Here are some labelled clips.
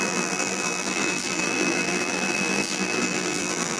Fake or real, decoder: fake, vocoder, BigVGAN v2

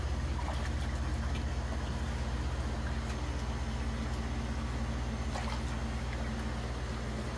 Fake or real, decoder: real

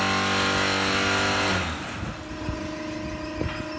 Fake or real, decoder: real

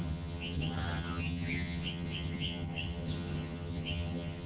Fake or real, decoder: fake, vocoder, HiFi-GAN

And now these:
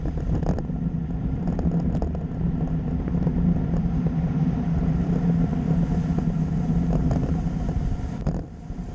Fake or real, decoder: real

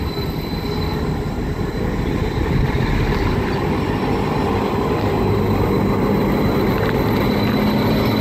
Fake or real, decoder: real